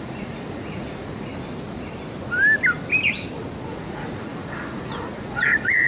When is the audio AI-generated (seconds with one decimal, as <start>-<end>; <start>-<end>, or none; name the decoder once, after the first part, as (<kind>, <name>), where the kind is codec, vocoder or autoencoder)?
0.0-1.3 (vocoder, Vocos); 3.7-5.9